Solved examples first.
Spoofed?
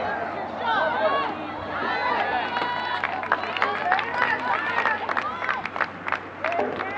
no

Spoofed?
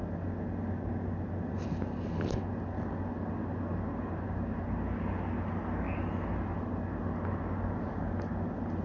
no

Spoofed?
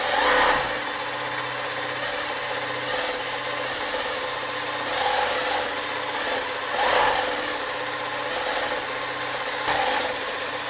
no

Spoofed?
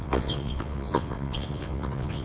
yes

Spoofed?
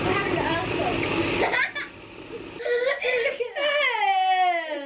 no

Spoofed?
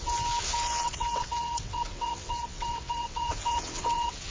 yes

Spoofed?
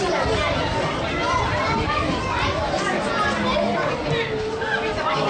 no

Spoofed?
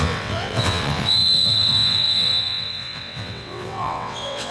yes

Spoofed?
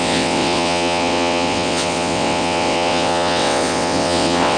yes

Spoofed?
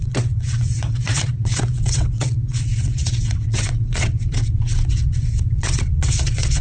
yes